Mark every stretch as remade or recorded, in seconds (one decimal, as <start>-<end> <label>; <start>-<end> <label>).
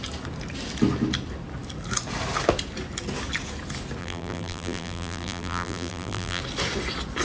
0.0-4.0 recorded; 4.0-6.4 remade; 6.4-7.2 recorded